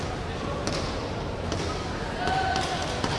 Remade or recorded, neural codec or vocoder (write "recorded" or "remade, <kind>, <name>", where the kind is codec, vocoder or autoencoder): recorded